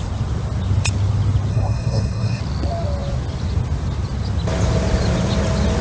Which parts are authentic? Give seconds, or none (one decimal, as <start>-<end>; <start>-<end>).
0.0-1.5; 2.4-5.8